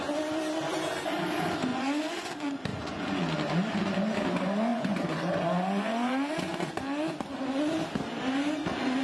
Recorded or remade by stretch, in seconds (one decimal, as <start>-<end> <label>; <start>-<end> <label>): 0.0-1.7 recorded; 1.7-2.3 remade; 2.3-2.7 recorded; 2.7-3.2 remade; 3.2-4.7 recorded; 4.7-6.8 remade; 6.8-9.0 recorded

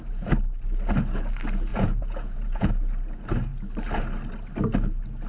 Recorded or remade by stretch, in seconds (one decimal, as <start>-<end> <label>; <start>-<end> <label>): 0.0-1.7 recorded; 1.7-2.7 remade; 2.7-5.3 recorded

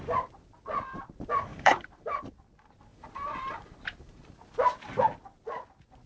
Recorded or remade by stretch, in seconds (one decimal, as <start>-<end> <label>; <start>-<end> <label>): 0.0-1.5 recorded; 1.5-2.2 remade; 2.2-2.9 recorded; 2.9-4.3 remade; 4.3-6.1 recorded

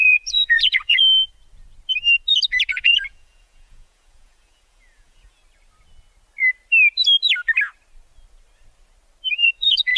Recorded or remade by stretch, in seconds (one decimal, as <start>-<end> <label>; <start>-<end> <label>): 0.0-1.0 remade; 1.0-2.7 recorded; 2.7-5.4 remade; 5.4-9.3 recorded; 9.3-10.0 remade

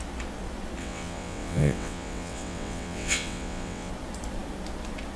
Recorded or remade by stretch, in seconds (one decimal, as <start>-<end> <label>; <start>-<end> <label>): 0.0-0.8 recorded; 0.8-3.9 remade; 3.9-5.2 recorded